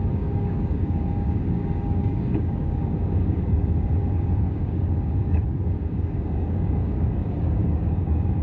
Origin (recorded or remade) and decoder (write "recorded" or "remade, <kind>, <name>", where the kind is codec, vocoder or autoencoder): remade, codec, DAC